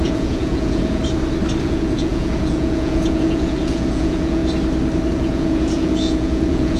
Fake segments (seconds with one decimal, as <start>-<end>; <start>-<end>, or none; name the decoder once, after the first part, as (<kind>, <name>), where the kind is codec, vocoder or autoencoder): 0.0-1.0 (vocoder, Vocos); 1.6-4.4; 5.1-6.8